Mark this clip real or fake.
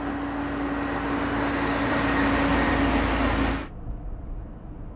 fake